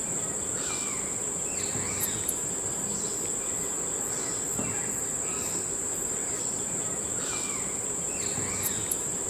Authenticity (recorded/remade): recorded